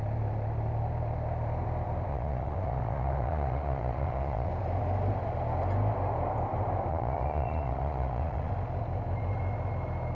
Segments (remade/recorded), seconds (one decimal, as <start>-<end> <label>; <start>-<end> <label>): 0.0-2.1 recorded; 2.1-4.5 remade; 4.5-6.9 recorded; 6.9-8.5 remade; 8.5-10.1 recorded